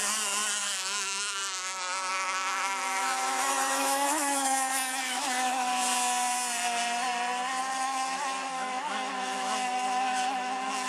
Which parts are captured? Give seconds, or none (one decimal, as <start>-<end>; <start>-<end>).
0.0-0.6; 1.4-2.1; 5.7-7.6